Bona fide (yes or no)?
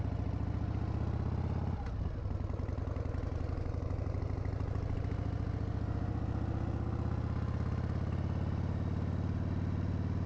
yes